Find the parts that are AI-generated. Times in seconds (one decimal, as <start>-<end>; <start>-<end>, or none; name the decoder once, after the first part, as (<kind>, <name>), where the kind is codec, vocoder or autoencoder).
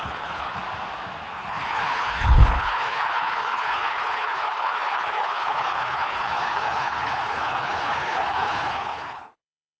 0.0-0.6 (codec, HILCodec); 1.3-9.8